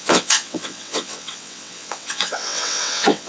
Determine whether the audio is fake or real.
fake